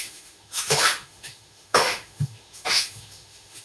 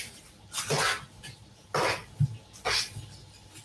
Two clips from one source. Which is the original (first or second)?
second